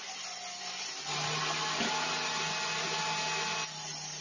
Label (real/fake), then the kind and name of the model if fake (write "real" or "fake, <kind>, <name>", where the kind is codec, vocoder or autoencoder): real